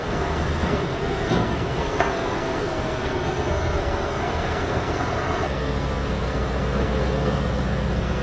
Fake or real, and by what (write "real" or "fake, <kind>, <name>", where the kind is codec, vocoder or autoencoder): fake, codec, SNAC